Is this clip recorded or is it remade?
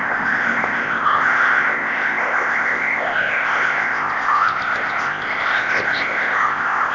remade